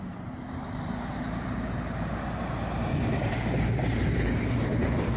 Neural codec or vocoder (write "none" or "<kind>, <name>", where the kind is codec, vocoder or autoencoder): vocoder, BigVGAN v2